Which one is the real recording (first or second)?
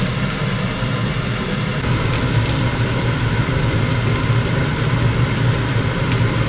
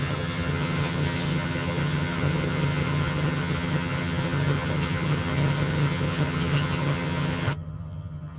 first